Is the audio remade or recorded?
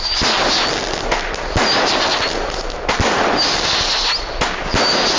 recorded